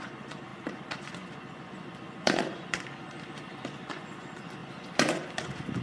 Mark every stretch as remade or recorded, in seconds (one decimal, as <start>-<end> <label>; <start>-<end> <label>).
0.0-5.8 remade

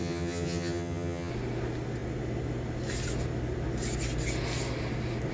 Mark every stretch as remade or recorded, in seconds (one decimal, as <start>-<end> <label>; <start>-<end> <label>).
0.0-1.3 remade; 1.3-5.3 recorded

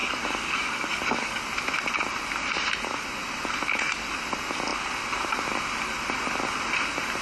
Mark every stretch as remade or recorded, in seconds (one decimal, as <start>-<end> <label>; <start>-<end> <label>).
0.0-1.4 remade; 1.4-7.2 recorded

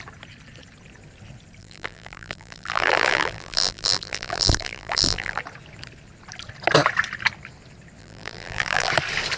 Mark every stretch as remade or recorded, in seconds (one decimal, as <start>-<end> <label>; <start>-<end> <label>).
0.0-1.6 recorded; 1.6-5.4 remade; 5.4-8.0 recorded; 8.0-8.9 remade; 8.9-9.4 recorded

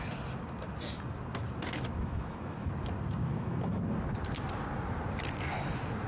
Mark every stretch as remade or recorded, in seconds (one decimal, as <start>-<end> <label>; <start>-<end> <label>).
0.0-1.9 recorded; 1.9-2.7 remade; 2.7-3.2 recorded; 3.2-3.8 remade; 3.8-6.1 recorded

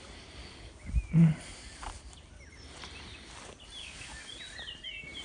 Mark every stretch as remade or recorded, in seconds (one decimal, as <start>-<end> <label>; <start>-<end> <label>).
0.0-0.4 recorded; 0.4-0.9 remade; 0.9-3.8 recorded; 3.8-4.3 remade; 4.3-5.2 recorded

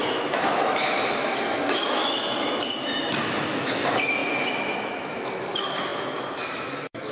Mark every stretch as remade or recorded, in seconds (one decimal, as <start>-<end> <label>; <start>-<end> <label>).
0.0-7.1 remade